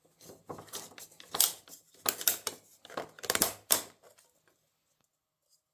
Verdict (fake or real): real